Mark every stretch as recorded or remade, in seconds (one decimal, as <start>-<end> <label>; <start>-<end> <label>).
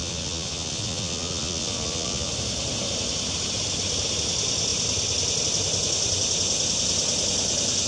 0.0-2.3 remade; 2.3-7.9 recorded